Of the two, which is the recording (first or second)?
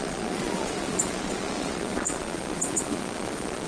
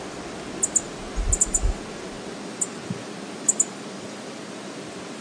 second